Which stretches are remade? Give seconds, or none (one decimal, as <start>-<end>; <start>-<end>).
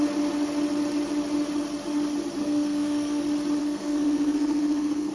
2.4-3.2; 3.6-5.1